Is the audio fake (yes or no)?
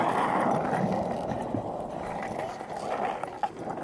no